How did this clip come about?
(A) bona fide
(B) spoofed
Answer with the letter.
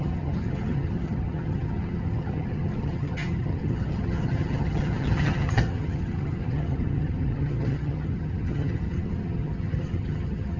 B